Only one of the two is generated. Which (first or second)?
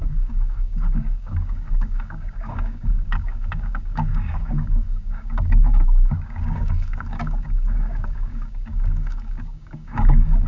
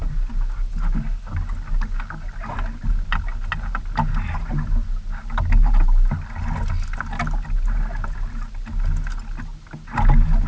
first